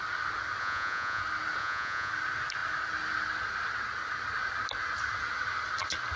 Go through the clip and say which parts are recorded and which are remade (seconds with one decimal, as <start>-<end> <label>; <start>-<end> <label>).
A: 0.0-0.6 recorded; 0.6-1.2 remade; 1.2-1.6 recorded; 1.6-2.1 remade; 2.1-6.2 recorded